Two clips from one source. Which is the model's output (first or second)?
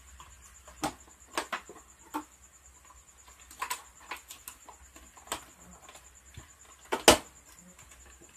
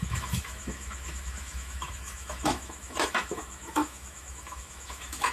second